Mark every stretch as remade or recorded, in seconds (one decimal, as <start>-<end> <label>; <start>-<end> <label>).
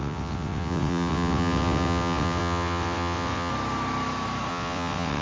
0.0-3.5 remade; 3.5-4.5 recorded; 4.5-5.2 remade